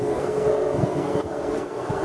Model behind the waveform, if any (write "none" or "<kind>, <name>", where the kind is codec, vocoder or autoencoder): codec, SNAC